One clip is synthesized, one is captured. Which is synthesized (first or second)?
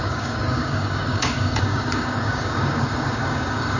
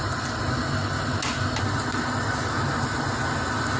first